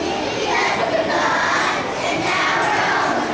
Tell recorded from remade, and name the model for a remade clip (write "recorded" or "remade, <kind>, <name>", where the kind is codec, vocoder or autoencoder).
recorded